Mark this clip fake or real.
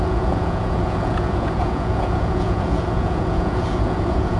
fake